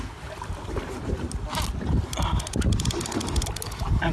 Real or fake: real